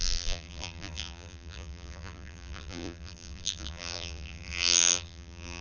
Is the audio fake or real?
fake